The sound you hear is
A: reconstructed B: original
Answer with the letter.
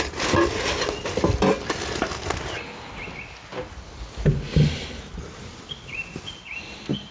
B